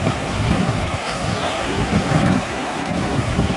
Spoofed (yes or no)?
yes